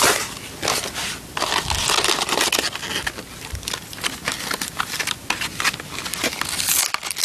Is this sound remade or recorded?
recorded